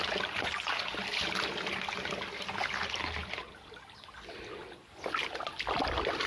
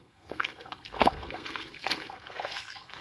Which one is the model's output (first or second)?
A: second